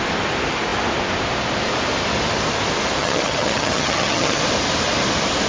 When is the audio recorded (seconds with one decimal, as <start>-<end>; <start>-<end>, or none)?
0.0-3.0; 4.4-5.5